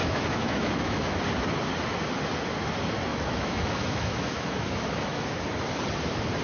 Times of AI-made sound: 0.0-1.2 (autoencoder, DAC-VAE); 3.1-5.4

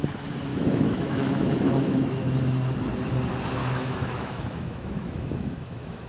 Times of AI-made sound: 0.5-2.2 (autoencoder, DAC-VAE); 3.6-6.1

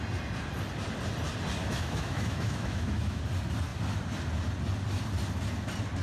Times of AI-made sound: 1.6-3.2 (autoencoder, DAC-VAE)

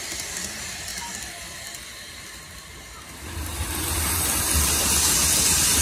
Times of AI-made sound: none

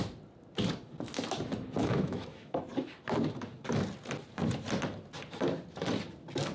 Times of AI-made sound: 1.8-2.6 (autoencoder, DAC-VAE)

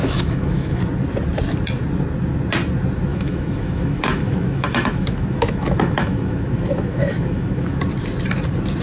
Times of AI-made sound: 0.0-0.8 (autoencoder, DAC-VAE); 3.1-7.8

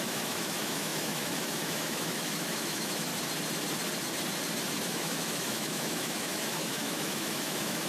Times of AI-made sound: 0.0-3.1 (autoencoder, DAC-VAE); 4.9-7.9

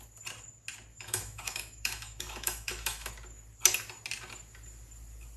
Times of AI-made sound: 0.9-3.1 (autoencoder, DAC-VAE)